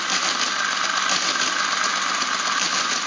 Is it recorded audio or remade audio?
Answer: recorded